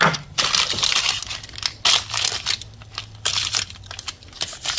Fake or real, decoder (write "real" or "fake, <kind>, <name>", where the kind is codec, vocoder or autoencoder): real